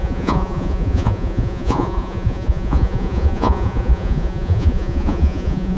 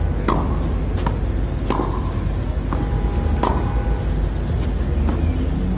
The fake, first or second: first